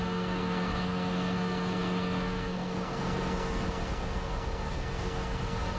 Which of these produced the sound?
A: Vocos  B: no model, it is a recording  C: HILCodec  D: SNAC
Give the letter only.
D